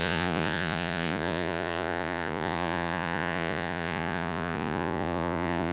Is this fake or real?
fake